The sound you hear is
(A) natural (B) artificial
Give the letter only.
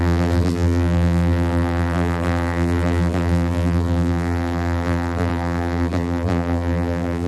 B